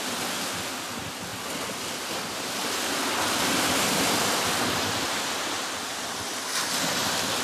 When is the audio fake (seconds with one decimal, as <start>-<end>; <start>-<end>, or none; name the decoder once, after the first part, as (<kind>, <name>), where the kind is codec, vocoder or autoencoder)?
none